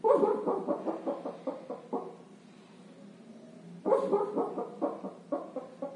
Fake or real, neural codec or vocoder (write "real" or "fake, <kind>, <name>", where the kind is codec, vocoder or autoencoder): real